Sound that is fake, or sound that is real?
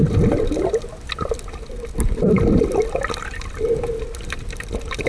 fake